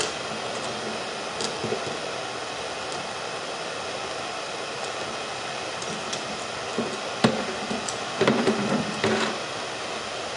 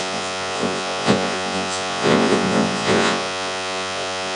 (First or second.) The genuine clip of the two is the first